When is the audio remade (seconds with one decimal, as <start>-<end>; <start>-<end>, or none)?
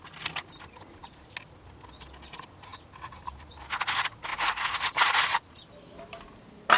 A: none